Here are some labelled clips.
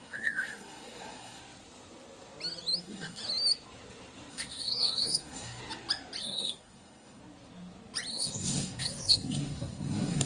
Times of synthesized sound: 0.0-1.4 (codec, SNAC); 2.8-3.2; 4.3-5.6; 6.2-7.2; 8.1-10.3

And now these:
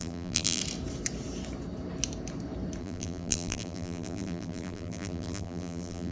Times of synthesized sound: 0.0-0.6 (vocoder, BigVGAN v2); 2.8-6.1

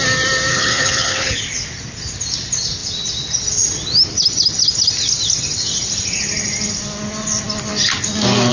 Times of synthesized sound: 0.5-1.4 (codec, HILCodec)